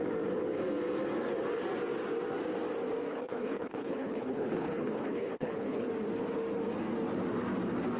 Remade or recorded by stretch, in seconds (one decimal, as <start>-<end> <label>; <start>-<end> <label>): 0.0-3.1 recorded; 3.1-5.9 remade; 5.9-8.0 recorded